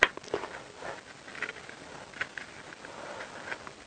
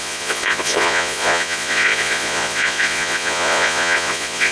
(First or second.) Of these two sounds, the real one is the first